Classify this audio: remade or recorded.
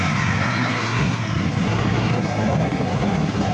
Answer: remade